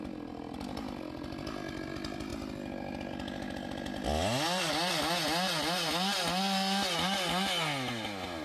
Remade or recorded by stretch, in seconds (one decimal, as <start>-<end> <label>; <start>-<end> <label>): 0.0-8.4 recorded